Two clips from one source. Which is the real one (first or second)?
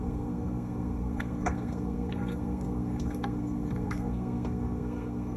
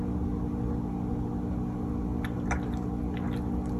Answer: second